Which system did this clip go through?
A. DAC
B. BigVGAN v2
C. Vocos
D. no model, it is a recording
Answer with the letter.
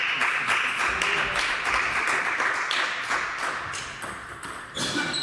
D